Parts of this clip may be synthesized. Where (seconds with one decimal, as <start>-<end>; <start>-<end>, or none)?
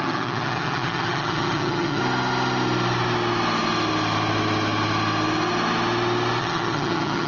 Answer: 0.0-2.0; 6.4-7.3